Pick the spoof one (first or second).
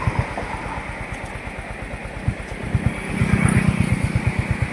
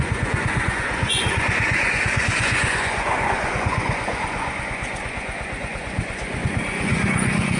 second